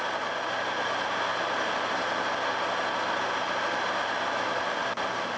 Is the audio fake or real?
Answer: real